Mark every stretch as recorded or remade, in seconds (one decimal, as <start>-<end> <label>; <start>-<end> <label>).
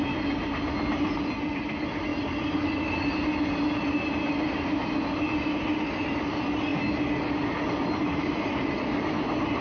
0.0-9.6 recorded